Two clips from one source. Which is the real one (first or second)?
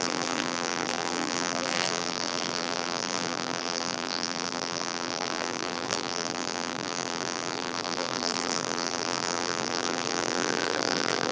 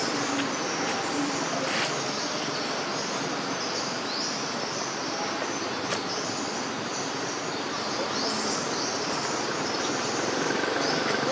second